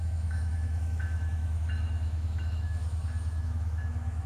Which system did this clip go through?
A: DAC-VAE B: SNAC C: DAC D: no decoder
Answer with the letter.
A